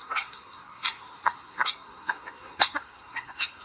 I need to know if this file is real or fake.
fake